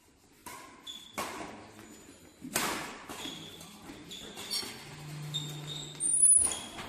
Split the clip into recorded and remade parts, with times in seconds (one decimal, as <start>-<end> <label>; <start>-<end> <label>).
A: 0.0-6.9 recorded